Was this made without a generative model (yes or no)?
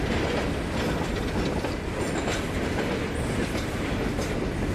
yes